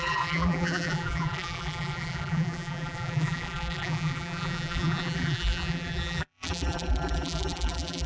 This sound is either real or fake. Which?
fake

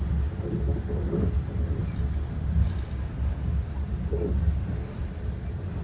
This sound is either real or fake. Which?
fake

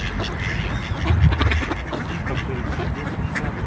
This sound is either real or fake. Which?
real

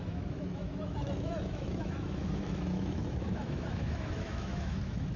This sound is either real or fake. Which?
fake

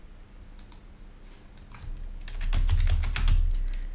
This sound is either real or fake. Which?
real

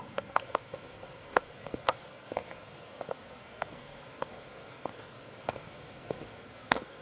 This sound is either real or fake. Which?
fake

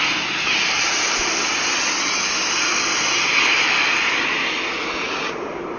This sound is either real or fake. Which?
real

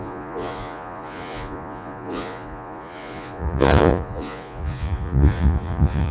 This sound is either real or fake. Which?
fake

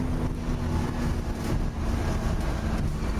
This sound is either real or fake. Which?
real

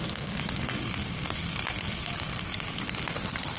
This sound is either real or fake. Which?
real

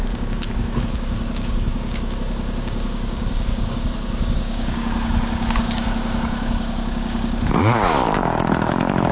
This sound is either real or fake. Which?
fake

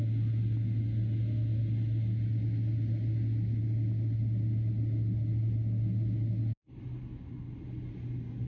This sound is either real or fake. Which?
real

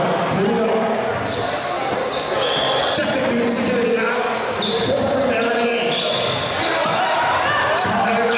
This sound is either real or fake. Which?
real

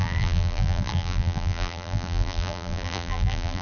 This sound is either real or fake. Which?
fake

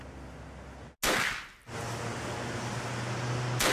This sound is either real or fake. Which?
real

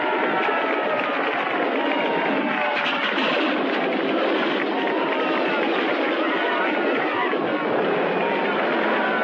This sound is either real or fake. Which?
real